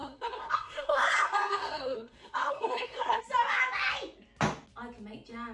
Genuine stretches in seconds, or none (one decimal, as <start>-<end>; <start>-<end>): 3.2-5.5